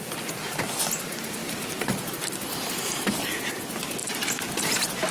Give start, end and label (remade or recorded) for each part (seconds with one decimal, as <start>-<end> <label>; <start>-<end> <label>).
0.0-4.0 recorded; 4.0-5.1 remade